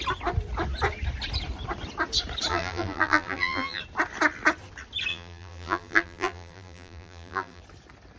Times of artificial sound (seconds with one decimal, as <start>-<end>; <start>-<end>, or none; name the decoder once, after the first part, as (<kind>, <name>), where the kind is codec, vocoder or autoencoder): 2.5-3.8 (vocoder, BigVGAN v2); 5.1-7.6